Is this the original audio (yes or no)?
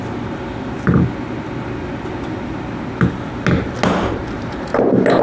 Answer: yes